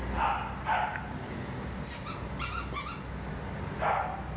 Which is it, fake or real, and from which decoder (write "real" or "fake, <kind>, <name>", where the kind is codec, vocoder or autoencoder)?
real